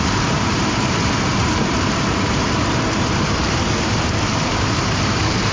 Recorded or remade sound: remade